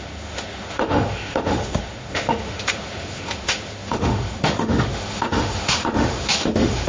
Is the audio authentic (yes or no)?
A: no